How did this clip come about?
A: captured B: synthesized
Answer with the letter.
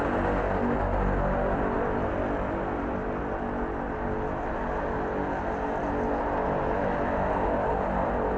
A